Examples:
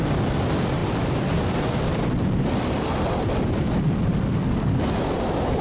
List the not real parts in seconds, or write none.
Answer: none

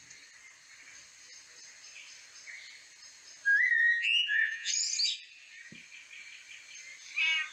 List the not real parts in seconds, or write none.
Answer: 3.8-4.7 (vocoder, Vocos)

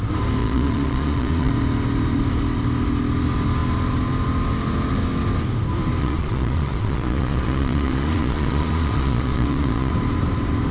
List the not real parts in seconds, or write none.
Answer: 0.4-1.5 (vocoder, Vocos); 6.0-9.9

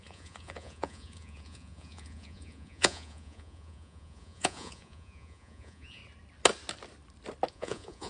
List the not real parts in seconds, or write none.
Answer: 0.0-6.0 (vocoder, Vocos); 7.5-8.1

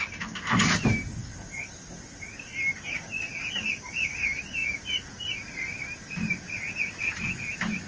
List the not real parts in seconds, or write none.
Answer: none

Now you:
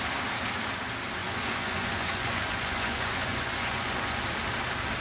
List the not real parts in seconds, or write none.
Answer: 1.2-4.2 (vocoder, Vocos)